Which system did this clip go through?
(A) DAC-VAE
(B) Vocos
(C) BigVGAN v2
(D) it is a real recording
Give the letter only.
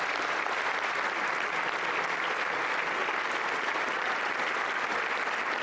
D